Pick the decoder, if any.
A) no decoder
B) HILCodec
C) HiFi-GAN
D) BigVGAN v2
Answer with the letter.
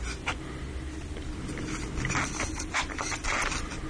A